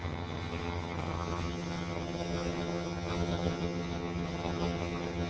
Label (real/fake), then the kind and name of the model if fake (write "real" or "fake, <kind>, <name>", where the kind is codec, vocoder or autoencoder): fake, vocoder, HiFi-GAN